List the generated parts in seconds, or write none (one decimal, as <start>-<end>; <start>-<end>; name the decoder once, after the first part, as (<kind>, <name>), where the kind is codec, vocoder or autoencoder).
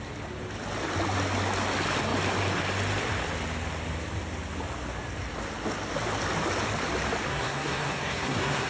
7.3-8.7 (codec, SNAC)